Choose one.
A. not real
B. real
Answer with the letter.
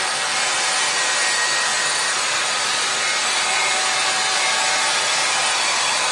A